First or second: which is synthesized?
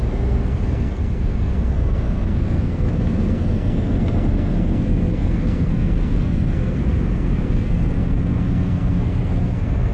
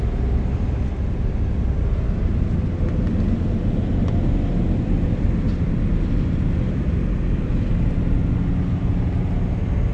first